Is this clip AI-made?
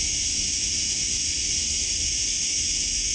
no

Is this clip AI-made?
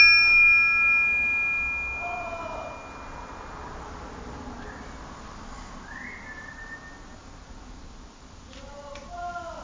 no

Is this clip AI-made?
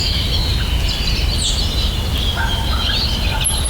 no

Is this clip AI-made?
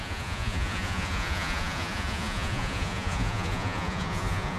yes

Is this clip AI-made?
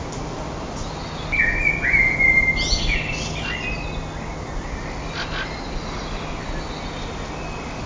no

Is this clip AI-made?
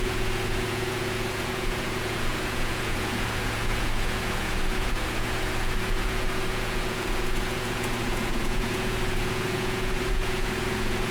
yes